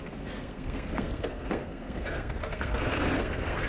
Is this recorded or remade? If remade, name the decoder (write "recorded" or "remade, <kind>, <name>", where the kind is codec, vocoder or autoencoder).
remade, codec, SNAC